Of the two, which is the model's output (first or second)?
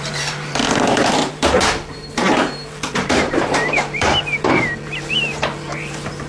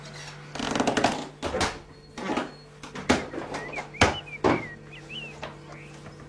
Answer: first